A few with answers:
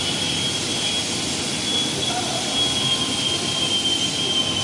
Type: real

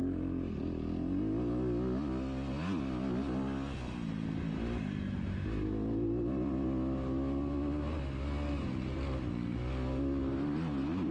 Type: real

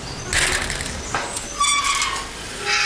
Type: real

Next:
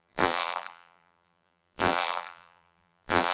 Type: fake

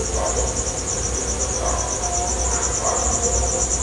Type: real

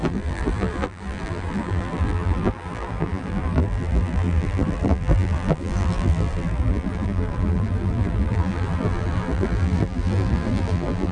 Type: fake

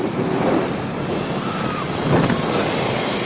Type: real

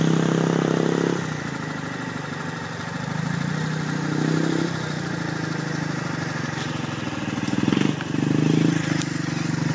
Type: real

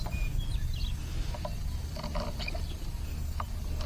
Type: real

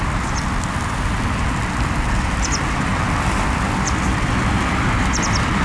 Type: fake